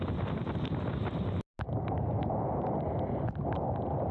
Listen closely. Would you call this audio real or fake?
real